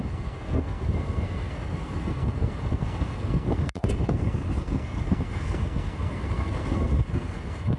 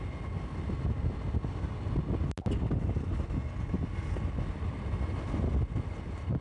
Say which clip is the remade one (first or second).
first